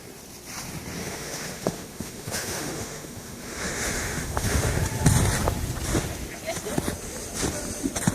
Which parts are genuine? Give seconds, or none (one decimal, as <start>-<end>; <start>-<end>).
0.0-1.0; 4.8-8.1